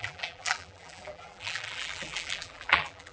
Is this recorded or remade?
remade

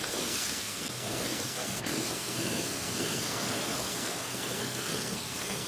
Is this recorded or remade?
remade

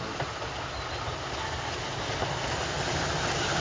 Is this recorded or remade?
recorded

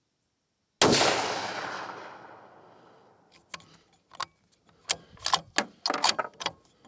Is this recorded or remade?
recorded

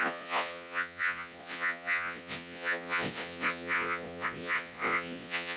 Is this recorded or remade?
remade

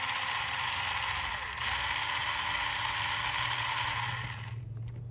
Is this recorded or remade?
recorded